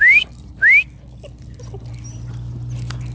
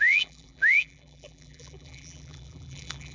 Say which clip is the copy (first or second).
second